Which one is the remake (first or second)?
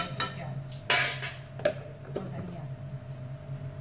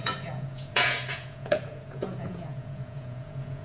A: second